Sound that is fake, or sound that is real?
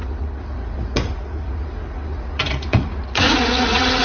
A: fake